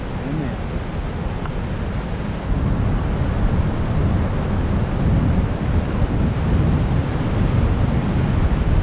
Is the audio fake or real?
real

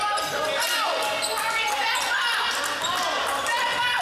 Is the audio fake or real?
real